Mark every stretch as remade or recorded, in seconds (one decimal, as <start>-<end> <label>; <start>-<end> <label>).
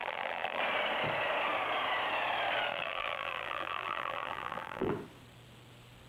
0.0-0.6 remade; 0.6-2.7 recorded; 2.7-4.9 remade; 4.9-6.1 recorded